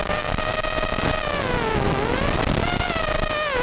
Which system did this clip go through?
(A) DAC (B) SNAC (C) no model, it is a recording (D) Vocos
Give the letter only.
C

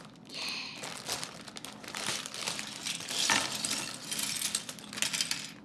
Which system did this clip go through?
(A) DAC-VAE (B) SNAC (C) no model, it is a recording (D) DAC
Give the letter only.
C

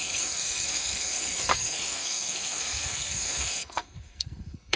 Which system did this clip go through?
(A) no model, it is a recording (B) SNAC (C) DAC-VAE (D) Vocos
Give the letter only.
B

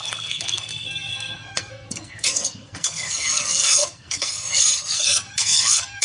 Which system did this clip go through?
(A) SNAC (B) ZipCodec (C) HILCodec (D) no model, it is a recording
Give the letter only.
A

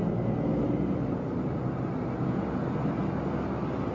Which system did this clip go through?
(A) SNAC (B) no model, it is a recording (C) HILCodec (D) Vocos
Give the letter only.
B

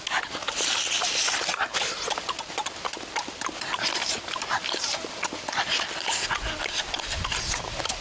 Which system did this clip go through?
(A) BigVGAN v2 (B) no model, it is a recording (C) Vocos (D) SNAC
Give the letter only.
B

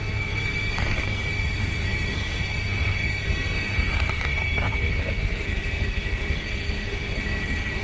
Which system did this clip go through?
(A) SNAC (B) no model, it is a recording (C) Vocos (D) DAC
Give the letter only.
A